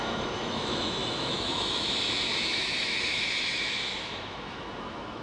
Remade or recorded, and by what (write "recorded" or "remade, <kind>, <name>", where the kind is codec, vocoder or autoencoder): remade, autoencoder, DAC-VAE